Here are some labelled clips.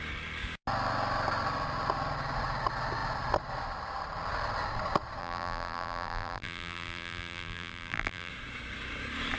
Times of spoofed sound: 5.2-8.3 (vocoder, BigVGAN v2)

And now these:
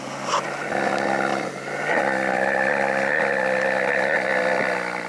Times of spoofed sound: none

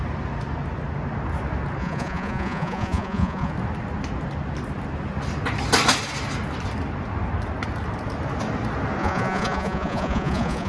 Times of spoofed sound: 1.8-3.5 (vocoder, Vocos); 9.0-10.7